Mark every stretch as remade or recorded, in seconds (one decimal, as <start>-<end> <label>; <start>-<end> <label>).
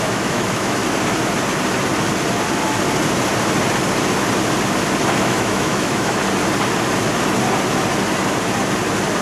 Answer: 0.0-0.8 remade; 0.8-5.1 recorded; 5.1-6.2 remade; 6.2-9.2 recorded